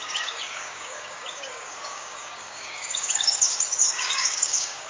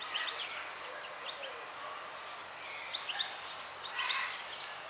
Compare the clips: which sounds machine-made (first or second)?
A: first